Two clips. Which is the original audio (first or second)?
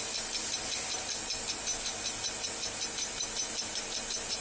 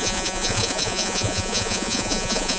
first